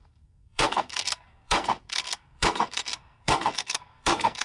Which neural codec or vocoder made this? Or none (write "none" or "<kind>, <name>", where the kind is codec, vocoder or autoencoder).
codec, SNAC